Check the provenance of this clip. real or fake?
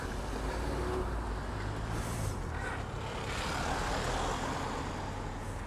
real